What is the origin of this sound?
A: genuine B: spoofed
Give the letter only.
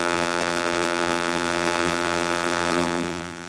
B